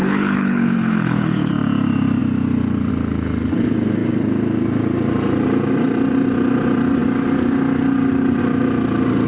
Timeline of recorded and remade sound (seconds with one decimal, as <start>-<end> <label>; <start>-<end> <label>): 0.0-1.5 remade; 1.5-9.3 recorded